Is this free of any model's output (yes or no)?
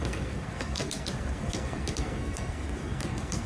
no